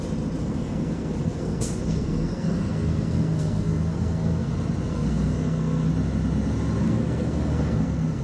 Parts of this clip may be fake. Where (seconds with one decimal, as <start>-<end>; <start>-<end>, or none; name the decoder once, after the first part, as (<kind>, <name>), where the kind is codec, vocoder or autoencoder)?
0.4-4.5 (codec, SNAC); 4.9-5.9; 6.8-8.2